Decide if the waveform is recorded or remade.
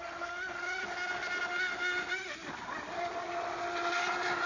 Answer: recorded